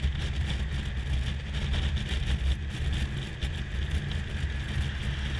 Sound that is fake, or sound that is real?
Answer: real